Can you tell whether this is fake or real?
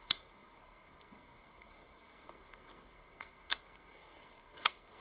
fake